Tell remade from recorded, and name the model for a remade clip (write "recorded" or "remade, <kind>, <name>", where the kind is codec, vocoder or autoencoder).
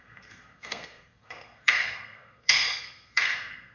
remade, codec, SNAC